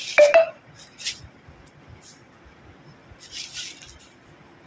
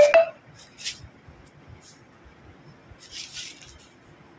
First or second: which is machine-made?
first